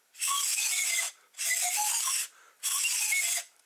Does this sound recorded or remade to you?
recorded